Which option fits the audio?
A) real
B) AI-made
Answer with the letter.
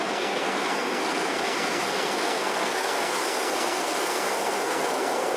B